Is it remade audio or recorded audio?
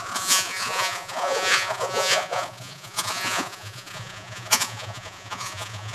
remade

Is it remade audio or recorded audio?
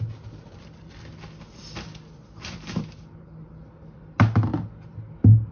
recorded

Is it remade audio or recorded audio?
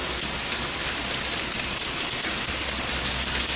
recorded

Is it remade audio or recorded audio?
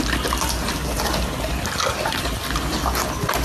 recorded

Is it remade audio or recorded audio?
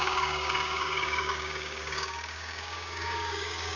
remade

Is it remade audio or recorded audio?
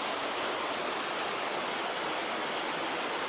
recorded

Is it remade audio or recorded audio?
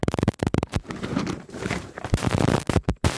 remade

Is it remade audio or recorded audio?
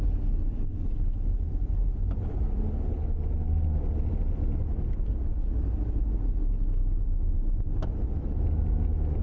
recorded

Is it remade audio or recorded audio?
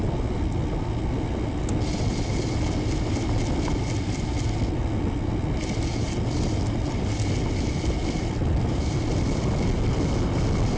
recorded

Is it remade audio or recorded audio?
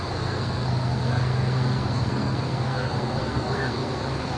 remade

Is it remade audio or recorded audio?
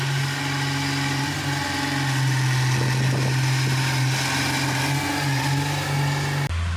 recorded